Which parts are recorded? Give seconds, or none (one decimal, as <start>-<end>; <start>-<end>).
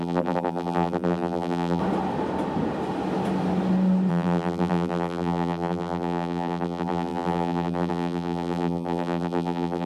1.8-4.1